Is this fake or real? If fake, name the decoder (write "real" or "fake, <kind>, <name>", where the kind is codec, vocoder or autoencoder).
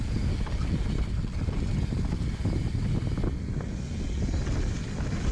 real